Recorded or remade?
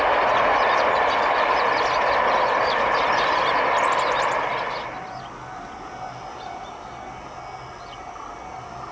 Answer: recorded